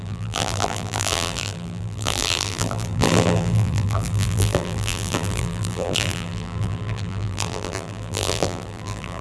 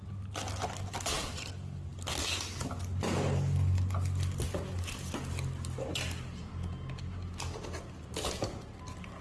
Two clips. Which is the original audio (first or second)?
second